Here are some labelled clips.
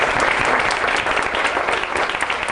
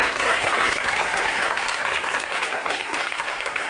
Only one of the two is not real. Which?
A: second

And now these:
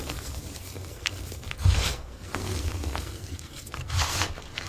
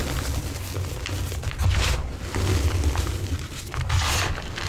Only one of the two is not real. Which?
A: first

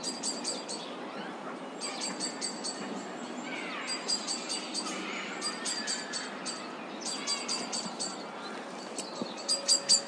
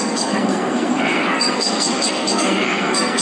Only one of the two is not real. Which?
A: second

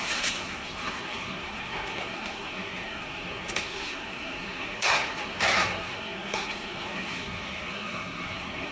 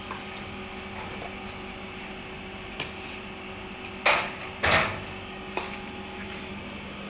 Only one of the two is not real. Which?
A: first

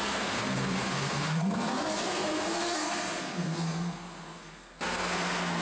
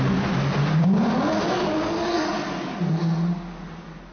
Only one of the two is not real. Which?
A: first